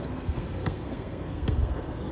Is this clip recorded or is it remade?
remade